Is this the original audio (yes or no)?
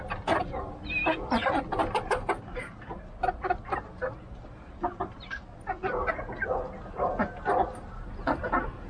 yes